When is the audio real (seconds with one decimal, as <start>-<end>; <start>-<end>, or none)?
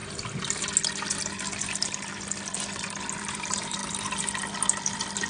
0.0-3.2; 3.8-5.3